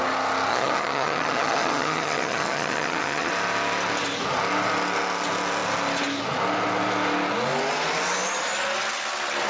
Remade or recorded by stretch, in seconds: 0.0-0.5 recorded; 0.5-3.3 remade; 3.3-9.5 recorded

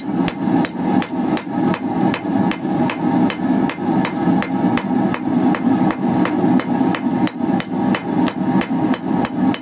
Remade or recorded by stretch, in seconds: 0.0-9.6 recorded

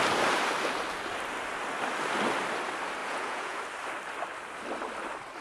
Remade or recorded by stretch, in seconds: 0.0-3.0 recorded; 3.0-3.6 remade; 3.6-5.4 recorded

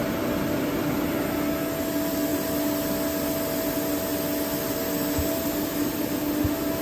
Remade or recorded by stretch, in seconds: 0.0-6.8 recorded

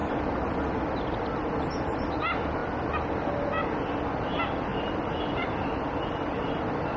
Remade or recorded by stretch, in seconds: 0.0-0.8 remade; 0.8-4.7 recorded; 4.7-5.8 remade; 5.8-7.0 recorded